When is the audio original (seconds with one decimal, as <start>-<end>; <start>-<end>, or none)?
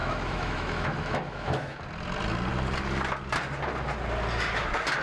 1.8-5.0